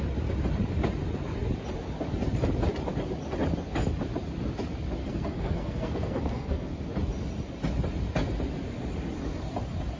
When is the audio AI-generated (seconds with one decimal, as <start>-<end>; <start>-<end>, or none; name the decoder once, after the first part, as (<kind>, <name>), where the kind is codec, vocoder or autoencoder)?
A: 5.0-6.7 (codec, SNAC)